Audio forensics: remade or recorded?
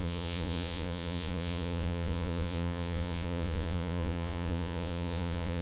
remade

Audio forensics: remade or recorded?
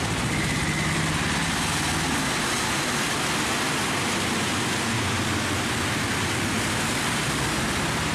recorded